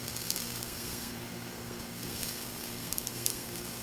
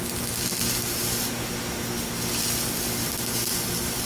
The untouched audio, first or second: second